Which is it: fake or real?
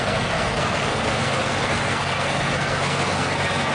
fake